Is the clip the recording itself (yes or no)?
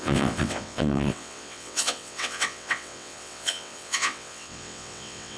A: no